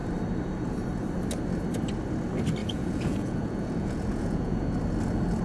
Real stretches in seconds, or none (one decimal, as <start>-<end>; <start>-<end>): 0.0-2.6; 4.6-5.4